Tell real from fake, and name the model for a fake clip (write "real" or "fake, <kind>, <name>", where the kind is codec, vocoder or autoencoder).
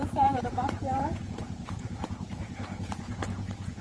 fake, vocoder, Vocos